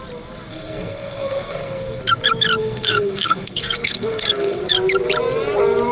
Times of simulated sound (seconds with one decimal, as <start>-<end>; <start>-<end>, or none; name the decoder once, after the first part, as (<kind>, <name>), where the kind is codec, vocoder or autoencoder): 0.5-2.0 (codec, SNAC); 2.6-4.7